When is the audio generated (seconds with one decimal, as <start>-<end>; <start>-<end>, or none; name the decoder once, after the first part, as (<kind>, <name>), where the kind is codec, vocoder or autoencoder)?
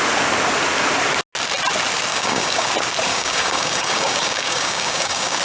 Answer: 2.1-2.7 (codec, DAC); 3.1-5.4